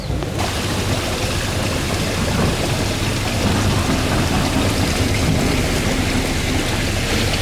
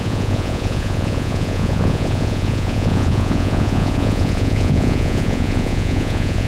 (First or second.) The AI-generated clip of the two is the second